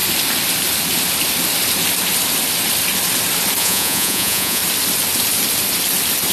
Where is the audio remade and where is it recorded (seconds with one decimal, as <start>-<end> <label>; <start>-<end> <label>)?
0.0-3.6 recorded; 3.6-4.6 remade; 4.6-6.3 recorded